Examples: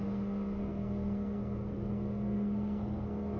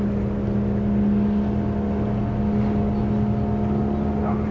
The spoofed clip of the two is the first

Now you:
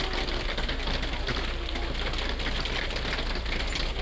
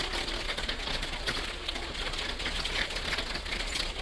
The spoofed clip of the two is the second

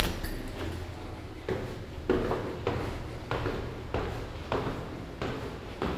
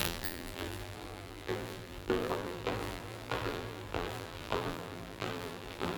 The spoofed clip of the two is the second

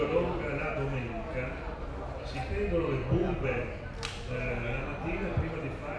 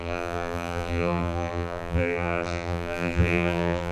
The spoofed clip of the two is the second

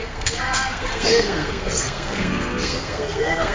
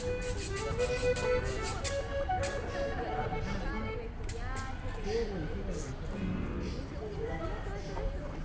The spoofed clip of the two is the first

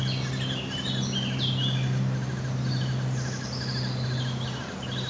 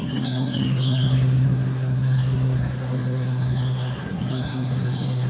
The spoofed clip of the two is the second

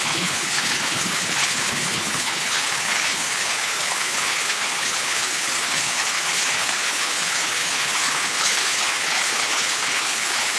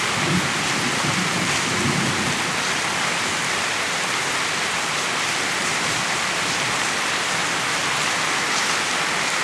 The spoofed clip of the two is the first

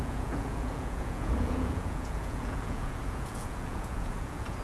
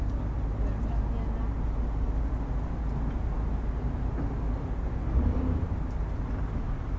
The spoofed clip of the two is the first